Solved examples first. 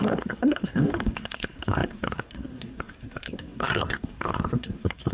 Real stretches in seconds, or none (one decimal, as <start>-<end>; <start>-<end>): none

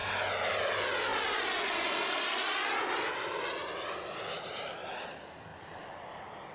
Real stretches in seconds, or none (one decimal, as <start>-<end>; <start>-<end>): 0.0-6.5

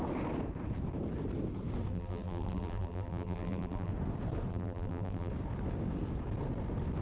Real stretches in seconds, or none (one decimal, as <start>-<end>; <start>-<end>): 0.0-1.9; 3.9-4.5; 5.3-7.0

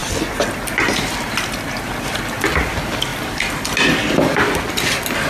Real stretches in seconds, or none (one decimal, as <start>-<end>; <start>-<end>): 0.0-5.3

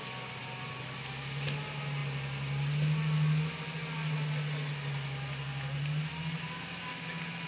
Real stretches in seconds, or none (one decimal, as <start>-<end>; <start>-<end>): 0.0-7.5

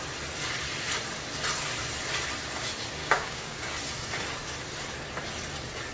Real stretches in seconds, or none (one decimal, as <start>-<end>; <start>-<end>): 0.0-3.0; 3.7-5.9